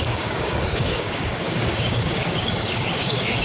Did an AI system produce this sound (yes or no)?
yes